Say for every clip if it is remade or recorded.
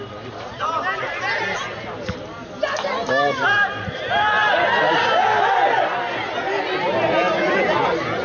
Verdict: recorded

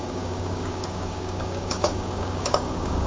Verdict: remade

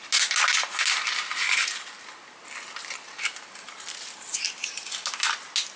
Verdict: recorded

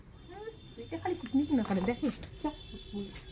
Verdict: recorded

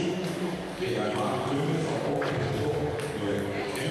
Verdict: remade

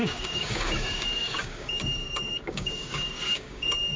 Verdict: remade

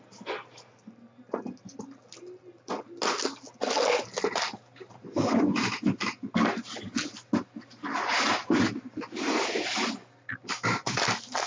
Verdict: recorded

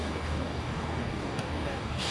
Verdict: remade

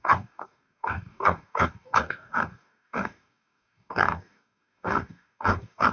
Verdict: remade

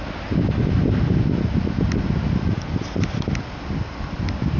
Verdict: recorded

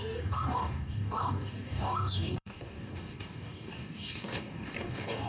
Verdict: remade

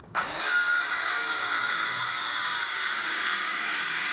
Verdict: remade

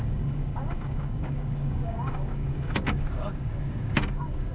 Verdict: remade